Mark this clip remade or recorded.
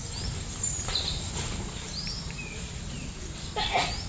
recorded